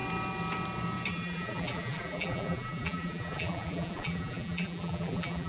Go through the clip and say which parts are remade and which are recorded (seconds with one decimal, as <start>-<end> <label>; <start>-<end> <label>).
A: 0.0-1.1 recorded; 1.1-5.5 remade